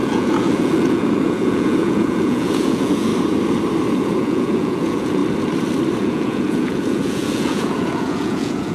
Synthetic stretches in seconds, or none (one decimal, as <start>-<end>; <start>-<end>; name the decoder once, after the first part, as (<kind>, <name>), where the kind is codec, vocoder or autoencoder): 0.0-3.1 (vocoder, Vocos); 3.9-5.2; 6.0-8.7